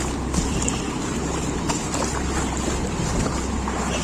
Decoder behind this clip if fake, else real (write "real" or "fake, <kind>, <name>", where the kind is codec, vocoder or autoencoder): real